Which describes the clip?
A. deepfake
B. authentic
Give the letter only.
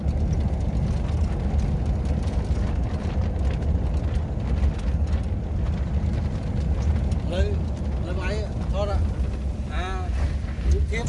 B